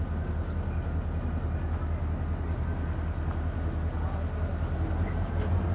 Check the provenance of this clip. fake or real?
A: real